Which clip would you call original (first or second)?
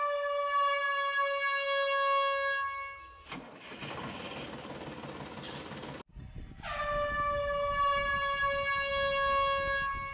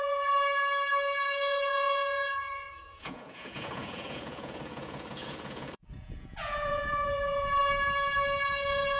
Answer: first